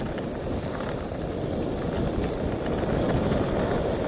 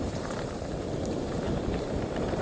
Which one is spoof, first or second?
second